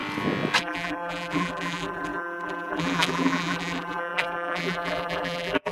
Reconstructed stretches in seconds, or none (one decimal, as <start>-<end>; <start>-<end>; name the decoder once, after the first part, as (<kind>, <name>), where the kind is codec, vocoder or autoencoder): 0.6-5.7 (vocoder, BigVGAN v2)